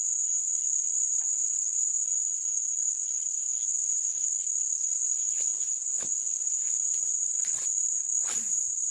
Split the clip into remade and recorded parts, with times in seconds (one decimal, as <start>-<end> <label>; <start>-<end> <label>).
0.0-6.8 remade; 6.8-7.3 recorded; 7.3-8.9 remade

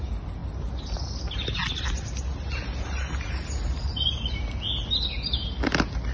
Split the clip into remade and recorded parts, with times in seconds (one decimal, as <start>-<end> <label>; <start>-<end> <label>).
0.0-6.1 recorded

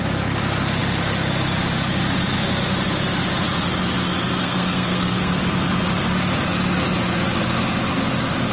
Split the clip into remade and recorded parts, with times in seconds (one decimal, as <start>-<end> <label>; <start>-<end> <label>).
0.0-4.4 recorded; 4.4-5.4 remade; 5.4-8.5 recorded

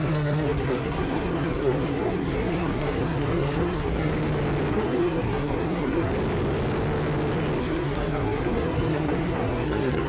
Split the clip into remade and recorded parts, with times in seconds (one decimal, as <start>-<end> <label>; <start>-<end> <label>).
0.0-4.1 remade; 4.1-4.7 recorded; 4.7-6.1 remade; 6.1-7.6 recorded; 7.6-10.1 remade

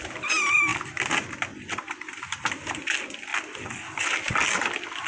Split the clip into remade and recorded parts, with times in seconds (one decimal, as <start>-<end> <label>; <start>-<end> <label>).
0.0-5.1 recorded

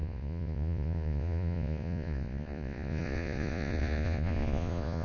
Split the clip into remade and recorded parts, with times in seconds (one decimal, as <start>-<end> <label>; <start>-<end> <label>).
0.0-5.0 remade